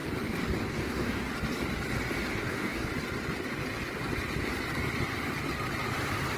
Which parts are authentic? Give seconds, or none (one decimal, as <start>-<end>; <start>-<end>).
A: 0.0-0.7; 1.3-2.3; 2.9-6.4